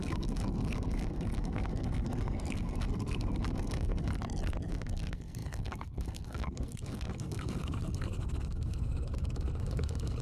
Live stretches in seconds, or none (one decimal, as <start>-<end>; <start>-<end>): 4.1-4.7